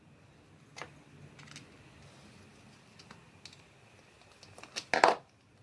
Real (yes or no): yes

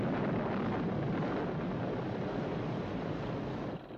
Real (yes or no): yes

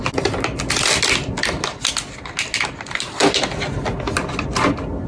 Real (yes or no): yes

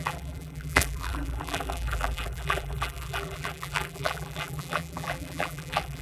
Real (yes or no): no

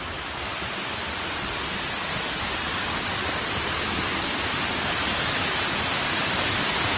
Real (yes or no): yes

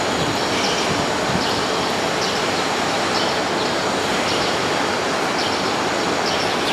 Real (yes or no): no